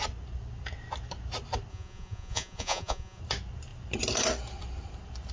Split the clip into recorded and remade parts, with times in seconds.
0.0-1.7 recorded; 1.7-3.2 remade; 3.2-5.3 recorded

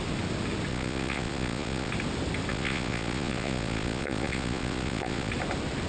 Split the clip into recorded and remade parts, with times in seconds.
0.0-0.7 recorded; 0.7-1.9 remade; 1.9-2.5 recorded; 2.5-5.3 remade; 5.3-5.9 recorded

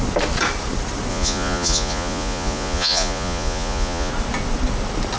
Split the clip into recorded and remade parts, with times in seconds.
0.0-1.1 recorded; 1.1-4.1 remade; 4.1-5.2 recorded